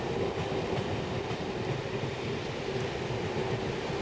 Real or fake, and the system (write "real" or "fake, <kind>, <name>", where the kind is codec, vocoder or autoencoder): real